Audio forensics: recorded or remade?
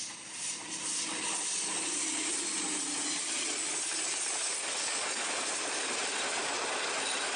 recorded